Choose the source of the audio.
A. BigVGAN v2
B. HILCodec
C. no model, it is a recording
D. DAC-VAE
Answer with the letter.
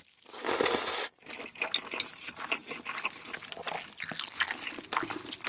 C